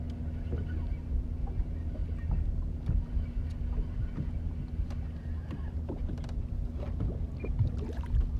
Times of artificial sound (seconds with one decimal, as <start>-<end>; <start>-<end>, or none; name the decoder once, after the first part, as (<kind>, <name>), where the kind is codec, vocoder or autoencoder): none